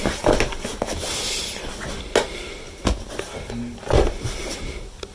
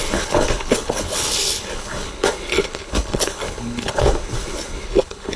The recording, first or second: first